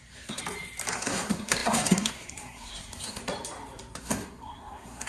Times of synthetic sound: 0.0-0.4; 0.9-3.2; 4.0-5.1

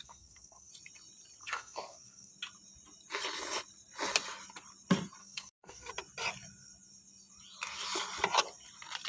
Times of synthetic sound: 0.0-0.7; 1.4-2.3; 5.2-5.9

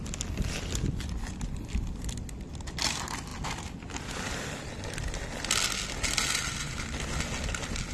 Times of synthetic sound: none

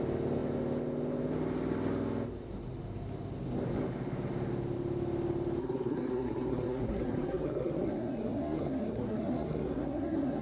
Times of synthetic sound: 5.6-10.4

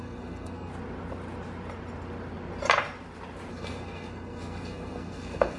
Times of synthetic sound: 0.0-0.7; 3.5-5.6

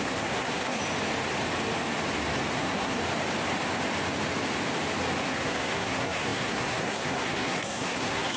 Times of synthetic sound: 0.0-0.8; 2.5-3.0; 5.2-8.4

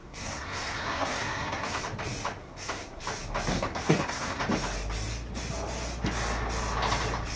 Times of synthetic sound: 0.0-1.8; 2.4-3.0; 3.5-4.4

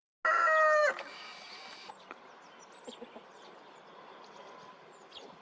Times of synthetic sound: none